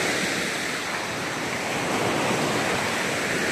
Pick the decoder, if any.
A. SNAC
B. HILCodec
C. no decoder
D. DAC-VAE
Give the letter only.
C